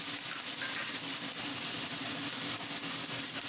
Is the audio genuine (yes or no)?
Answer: yes